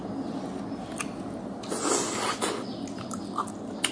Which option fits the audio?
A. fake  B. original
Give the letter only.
B